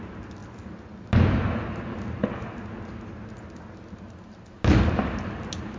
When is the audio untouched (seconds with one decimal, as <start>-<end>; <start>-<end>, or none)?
0.0-5.8